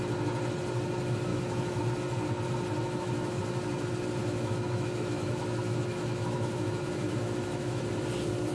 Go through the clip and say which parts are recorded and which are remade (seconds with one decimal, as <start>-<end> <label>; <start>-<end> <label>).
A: 0.0-1.3 recorded; 1.3-1.8 remade; 1.8-2.8 recorded; 2.8-3.4 remade; 3.4-4.2 recorded; 4.2-7.8 remade; 7.8-8.5 recorded